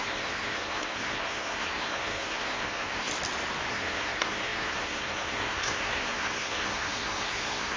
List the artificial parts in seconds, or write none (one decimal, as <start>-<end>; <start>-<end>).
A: 0.0-3.1; 3.7-7.8